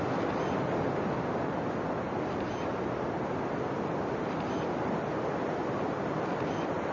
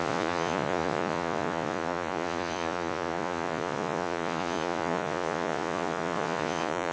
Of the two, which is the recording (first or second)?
first